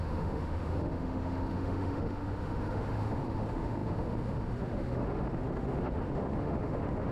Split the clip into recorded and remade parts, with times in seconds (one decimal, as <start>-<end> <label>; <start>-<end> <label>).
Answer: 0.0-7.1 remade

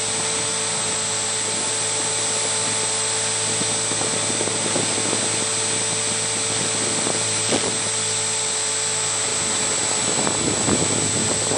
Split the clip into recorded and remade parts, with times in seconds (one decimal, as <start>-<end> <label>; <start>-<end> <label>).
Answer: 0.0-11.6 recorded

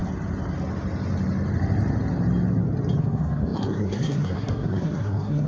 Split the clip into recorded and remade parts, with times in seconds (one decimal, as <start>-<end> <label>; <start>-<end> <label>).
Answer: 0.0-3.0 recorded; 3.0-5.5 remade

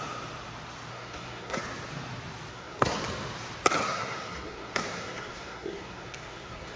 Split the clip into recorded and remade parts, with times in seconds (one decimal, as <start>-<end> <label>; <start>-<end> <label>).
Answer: 0.0-0.9 recorded; 0.9-1.6 remade; 1.6-2.5 recorded; 2.5-3.0 remade; 3.0-3.8 recorded; 3.8-6.8 remade

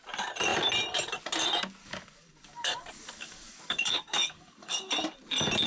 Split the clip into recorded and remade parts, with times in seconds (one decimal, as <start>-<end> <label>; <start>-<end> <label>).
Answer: 0.0-1.8 recorded; 1.8-4.9 remade; 4.9-5.7 recorded

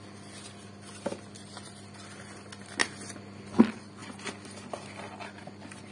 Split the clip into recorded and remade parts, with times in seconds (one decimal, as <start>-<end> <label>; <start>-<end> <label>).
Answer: 0.0-5.9 recorded

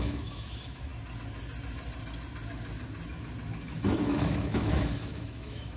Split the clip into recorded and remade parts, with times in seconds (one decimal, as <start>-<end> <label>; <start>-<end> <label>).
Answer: 0.0-0.9 remade; 0.9-4.0 recorded; 4.0-5.8 remade

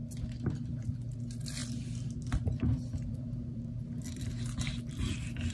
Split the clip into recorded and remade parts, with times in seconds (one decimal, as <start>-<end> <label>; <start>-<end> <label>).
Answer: 0.0-1.2 remade; 1.2-1.6 recorded; 1.6-4.0 remade; 4.0-5.5 recorded